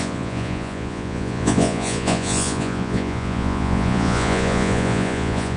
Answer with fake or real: fake